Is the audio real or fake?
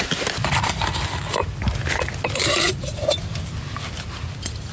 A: real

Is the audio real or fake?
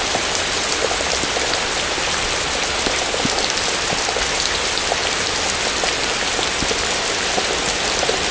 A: real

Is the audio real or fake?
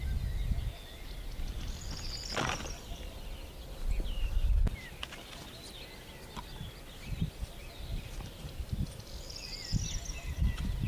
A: real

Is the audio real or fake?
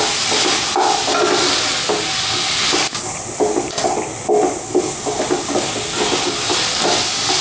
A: real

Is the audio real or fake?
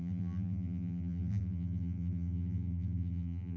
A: fake